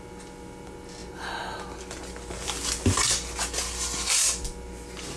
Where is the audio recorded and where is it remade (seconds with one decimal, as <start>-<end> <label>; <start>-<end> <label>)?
0.0-5.2 recorded